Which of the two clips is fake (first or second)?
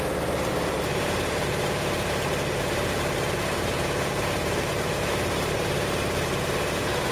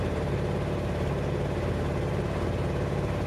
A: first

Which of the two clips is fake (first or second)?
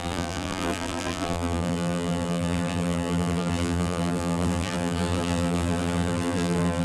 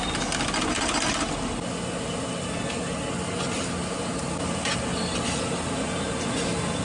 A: first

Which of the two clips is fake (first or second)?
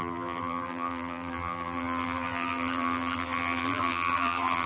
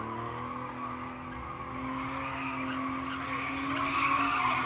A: first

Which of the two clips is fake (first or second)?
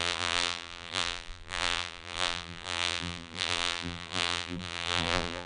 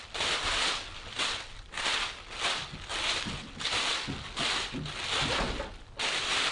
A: first